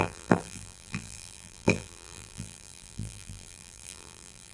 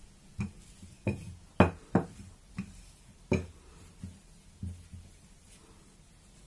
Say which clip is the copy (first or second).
first